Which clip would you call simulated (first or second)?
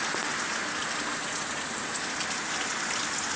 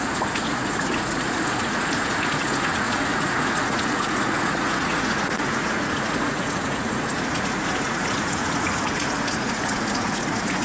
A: second